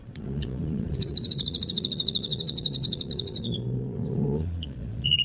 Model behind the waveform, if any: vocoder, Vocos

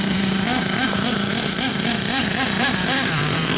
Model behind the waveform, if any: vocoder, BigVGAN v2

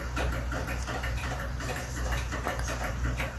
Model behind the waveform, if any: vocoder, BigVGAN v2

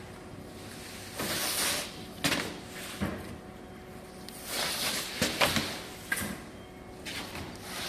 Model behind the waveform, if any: none